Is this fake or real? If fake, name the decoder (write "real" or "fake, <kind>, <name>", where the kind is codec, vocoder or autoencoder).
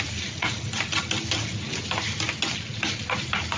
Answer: real